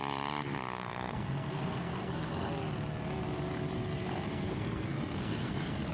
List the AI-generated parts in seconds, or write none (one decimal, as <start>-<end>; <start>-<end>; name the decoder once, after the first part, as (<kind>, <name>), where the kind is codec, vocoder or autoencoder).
0.8-2.5 (codec, SNAC); 4.3-5.9